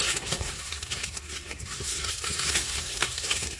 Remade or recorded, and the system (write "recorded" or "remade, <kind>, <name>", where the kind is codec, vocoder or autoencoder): remade, codec, SNAC